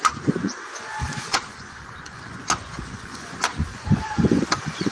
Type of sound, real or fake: fake